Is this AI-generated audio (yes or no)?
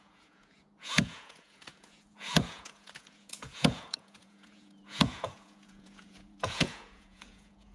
yes